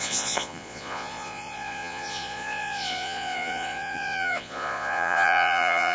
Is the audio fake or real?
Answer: fake